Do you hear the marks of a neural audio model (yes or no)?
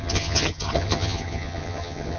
yes